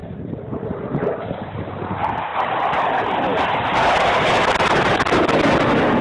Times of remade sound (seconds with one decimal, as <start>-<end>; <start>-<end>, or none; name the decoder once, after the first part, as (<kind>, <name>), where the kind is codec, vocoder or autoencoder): 2.3-2.9 (vocoder, BigVGAN v2)